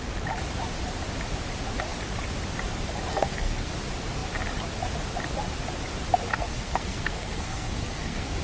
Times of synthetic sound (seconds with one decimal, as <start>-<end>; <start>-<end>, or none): 3.1-3.7; 6.3-8.4